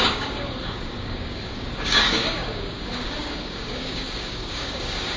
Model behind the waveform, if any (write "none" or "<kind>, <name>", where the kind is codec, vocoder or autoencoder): codec, DAC